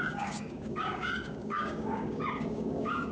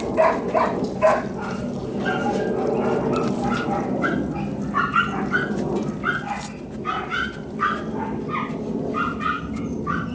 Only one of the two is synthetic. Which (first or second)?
first